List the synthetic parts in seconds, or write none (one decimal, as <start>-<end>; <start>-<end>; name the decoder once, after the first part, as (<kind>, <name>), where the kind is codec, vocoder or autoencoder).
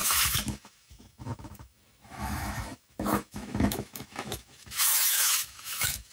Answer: 0.0-6.1 (autoencoder, DAC-VAE)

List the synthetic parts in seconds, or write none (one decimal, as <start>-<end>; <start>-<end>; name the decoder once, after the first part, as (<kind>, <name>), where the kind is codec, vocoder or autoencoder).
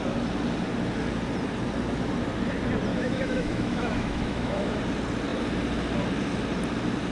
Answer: 2.9-4.8 (autoencoder, DAC-VAE)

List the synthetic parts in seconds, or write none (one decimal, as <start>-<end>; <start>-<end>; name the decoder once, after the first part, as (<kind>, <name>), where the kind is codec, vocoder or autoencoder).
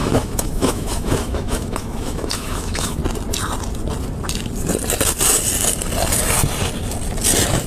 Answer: 0.0-3.0 (autoencoder, DAC-VAE)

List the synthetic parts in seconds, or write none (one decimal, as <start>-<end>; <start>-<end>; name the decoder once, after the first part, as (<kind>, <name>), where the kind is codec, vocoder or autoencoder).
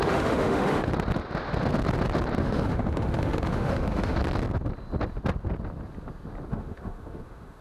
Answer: 0.0-0.9 (autoencoder, DAC-VAE); 2.4-4.2; 6.5-7.6